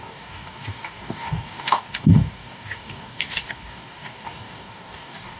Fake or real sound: fake